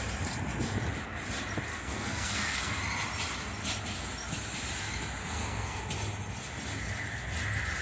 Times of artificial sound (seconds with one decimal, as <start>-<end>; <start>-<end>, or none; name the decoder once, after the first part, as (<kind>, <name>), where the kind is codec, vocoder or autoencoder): 1.7-2.8 (codec, SNAC); 5.2-5.8